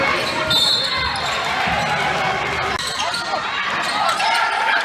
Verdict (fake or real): real